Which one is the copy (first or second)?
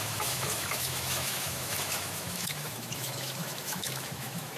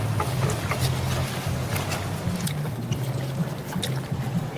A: first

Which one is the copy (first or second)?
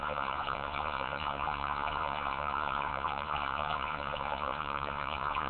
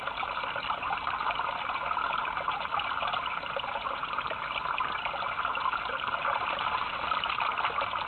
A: first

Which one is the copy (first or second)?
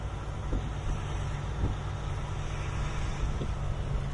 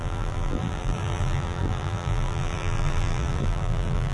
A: second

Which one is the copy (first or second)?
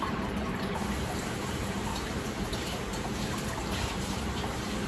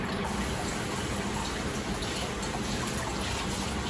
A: first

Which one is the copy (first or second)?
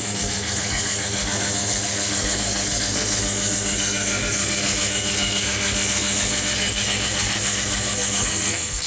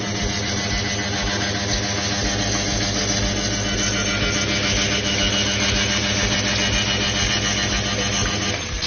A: first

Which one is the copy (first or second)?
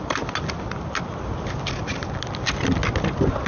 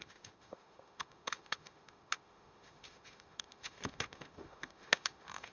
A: second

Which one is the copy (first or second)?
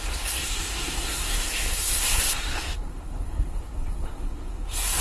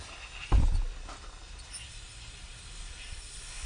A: first